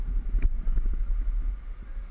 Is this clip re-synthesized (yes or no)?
no